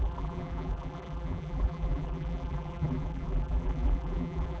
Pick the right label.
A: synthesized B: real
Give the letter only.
A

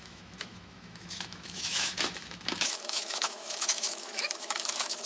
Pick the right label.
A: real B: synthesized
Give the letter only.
B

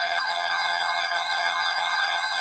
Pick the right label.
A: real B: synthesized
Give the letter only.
B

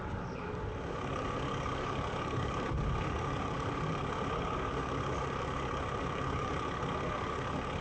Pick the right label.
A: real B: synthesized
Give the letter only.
B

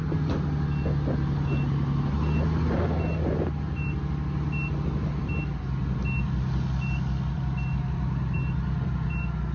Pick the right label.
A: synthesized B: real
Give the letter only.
B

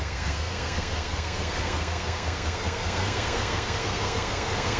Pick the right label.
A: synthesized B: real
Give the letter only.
A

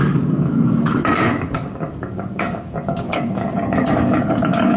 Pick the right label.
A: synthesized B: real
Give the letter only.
A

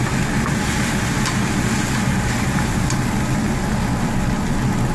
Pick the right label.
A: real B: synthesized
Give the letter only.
A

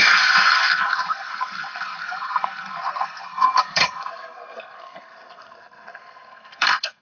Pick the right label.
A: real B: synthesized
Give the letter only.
B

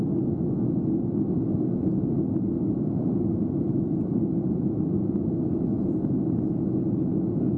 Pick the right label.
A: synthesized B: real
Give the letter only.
B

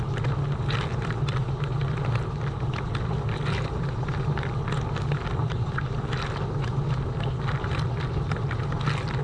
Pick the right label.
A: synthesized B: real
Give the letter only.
B